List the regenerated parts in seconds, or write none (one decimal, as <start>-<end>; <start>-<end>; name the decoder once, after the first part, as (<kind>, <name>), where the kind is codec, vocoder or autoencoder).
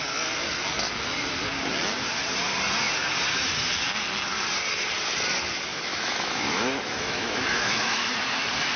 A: 5.7-8.2 (autoencoder, DAC-VAE)